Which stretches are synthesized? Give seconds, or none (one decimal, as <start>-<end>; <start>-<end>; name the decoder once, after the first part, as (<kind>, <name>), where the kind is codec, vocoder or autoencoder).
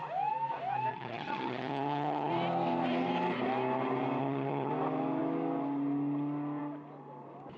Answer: 0.9-2.3 (vocoder, HiFi-GAN); 4.2-4.7